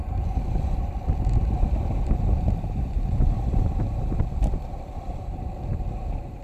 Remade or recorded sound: recorded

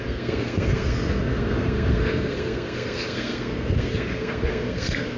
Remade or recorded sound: remade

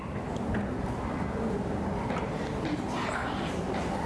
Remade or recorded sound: recorded